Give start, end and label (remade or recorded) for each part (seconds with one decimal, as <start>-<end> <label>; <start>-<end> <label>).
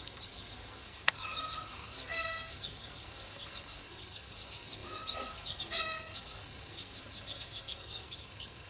0.0-8.7 remade